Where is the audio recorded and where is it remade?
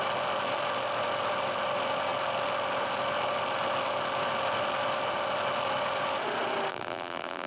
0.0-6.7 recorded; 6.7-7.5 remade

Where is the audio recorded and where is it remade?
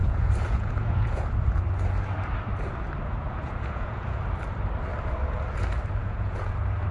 0.0-1.3 remade; 1.3-3.2 recorded; 3.2-4.2 remade; 4.2-6.0 recorded; 6.0-6.5 remade; 6.5-6.9 recorded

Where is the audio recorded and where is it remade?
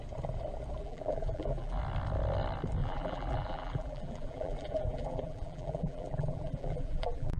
0.0-0.8 recorded; 0.8-1.8 remade; 1.8-2.8 recorded; 2.8-7.4 remade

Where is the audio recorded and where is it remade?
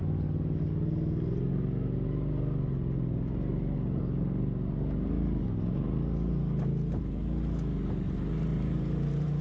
0.0-8.5 recorded; 8.5-9.4 remade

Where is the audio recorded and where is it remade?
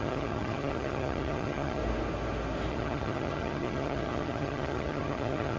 0.0-1.8 remade; 1.8-2.7 recorded; 2.7-5.6 remade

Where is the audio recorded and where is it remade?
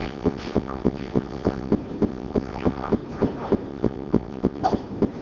0.0-1.7 remade; 1.7-2.1 recorded; 2.1-2.9 remade; 2.9-3.7 recorded; 3.7-4.6 remade; 4.6-5.2 recorded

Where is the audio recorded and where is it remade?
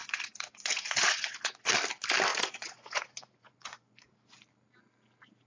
0.0-1.7 remade; 1.7-2.3 recorded; 2.3-4.1 remade; 4.1-5.5 recorded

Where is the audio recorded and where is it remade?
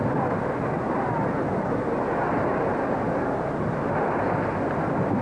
0.0-2.7 recorded; 2.7-5.2 remade